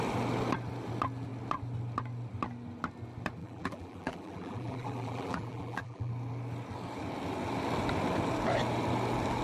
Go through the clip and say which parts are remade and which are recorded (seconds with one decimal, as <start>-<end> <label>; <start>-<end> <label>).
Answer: 0.0-3.4 recorded; 3.4-6.1 remade; 6.1-9.4 recorded